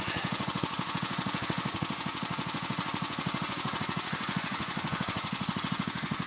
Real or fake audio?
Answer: fake